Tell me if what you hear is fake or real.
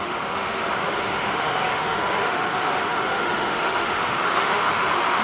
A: fake